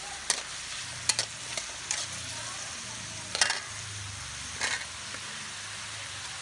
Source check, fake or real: real